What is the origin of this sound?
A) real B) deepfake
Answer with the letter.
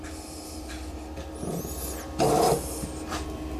A